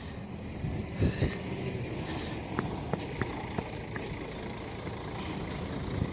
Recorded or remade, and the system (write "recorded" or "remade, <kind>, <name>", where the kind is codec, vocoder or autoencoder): recorded